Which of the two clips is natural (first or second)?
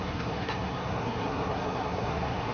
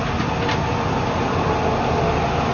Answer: second